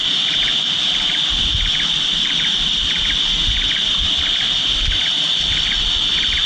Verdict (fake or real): real